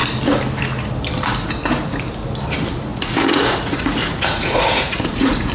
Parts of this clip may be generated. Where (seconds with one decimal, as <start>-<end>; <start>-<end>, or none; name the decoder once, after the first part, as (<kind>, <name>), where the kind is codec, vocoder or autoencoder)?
2.9-5.5 (vocoder, Vocos)